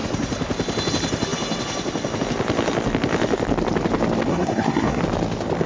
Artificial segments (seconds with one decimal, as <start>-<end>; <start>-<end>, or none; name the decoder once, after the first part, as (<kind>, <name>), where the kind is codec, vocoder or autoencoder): 4.3-5.0 (codec, SNAC)